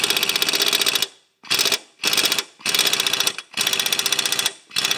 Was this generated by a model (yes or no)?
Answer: no